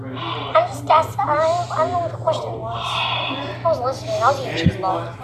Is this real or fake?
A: real